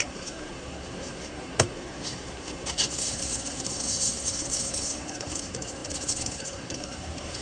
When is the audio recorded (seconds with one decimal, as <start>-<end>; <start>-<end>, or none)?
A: none